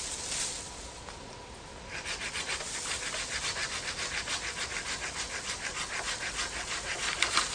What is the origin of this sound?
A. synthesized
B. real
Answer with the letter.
B